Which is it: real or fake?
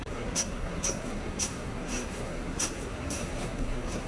fake